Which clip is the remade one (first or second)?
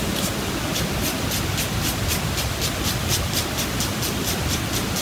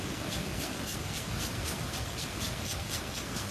second